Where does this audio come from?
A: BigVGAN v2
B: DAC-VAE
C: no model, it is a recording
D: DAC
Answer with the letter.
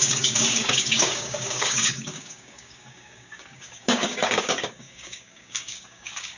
D